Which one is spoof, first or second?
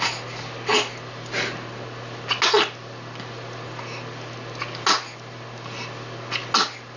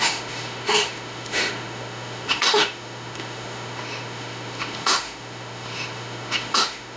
second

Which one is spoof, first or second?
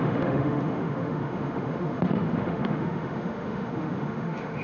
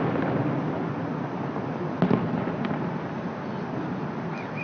first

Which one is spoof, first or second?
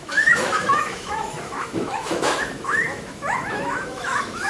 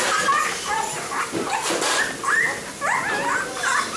first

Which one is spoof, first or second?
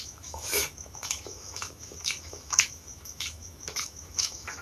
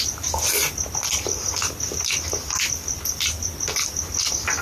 first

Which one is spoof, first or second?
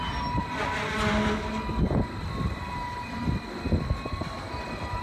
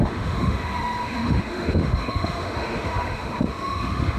second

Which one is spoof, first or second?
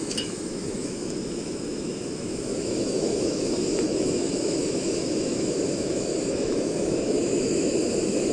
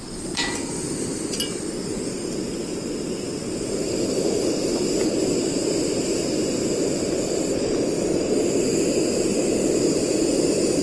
first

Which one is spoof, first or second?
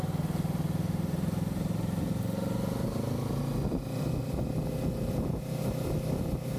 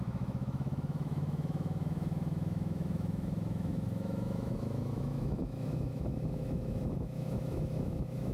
second